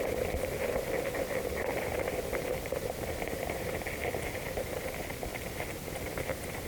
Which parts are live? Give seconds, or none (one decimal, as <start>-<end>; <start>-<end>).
0.0-5.3; 6.0-6.7